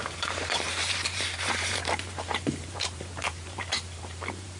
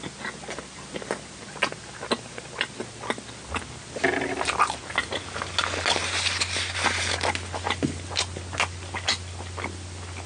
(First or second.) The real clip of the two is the second